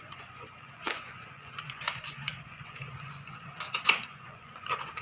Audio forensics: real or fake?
fake